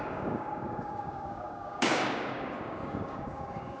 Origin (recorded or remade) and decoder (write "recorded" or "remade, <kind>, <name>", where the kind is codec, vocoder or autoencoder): remade, codec, DAC